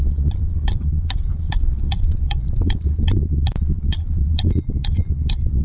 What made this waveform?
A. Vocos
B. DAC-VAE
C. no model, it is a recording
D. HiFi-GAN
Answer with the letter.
A